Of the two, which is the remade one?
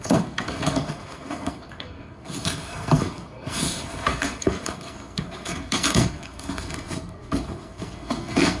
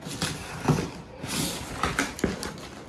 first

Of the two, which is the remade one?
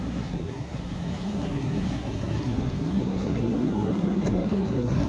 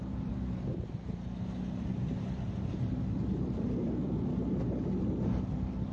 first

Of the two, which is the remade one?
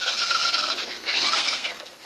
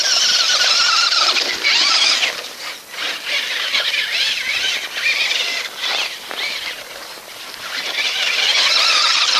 first